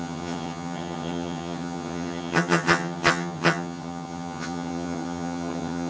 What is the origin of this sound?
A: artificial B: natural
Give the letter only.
A